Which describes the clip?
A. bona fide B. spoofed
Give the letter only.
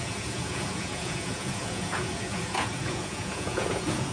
B